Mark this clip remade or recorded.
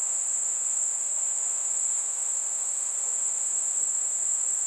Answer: remade